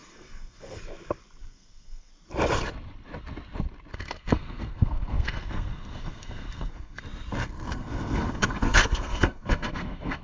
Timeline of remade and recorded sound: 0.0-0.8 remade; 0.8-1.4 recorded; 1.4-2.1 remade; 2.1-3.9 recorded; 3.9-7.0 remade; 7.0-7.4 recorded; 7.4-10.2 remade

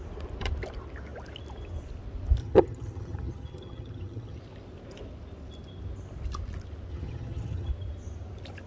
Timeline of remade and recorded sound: 0.0-2.4 recorded; 2.4-4.4 remade; 4.4-6.9 recorded; 6.9-7.7 remade; 7.7-8.7 recorded

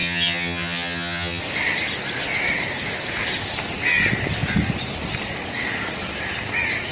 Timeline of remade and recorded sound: 0.0-1.4 remade; 1.4-6.9 recorded